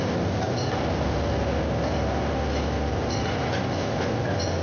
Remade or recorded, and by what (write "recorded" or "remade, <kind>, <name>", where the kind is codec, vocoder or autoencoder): recorded